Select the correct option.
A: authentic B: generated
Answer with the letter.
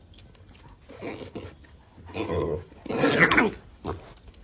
A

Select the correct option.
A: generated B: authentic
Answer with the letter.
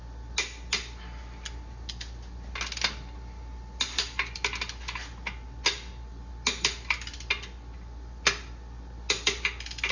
B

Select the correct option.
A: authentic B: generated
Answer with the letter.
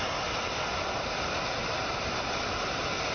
A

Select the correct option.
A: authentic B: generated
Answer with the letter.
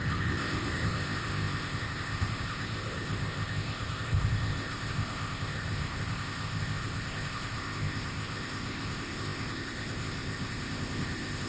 B